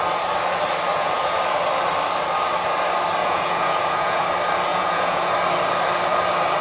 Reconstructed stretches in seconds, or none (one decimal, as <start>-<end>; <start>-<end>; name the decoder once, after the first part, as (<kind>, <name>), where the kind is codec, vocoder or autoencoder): 0.9-1.4 (vocoder, Vocos); 3.2-4.2; 4.7-5.3